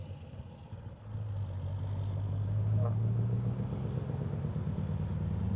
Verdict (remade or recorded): recorded